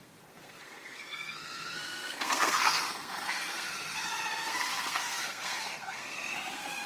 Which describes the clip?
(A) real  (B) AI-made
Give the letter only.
B